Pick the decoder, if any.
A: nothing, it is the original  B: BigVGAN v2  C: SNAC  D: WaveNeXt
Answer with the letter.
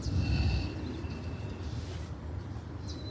A